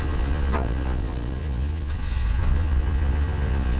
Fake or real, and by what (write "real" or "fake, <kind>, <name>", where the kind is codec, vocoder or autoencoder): fake, vocoder, Vocos